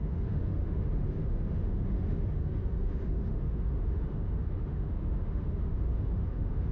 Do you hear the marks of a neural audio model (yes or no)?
yes